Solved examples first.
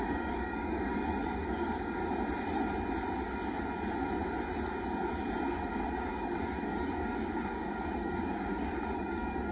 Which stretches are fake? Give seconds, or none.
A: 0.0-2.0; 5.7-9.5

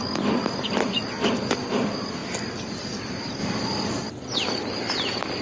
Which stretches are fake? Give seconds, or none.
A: 3.4-4.0